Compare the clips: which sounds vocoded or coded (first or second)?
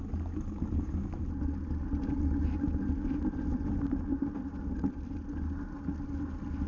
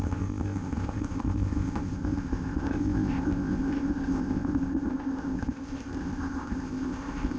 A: second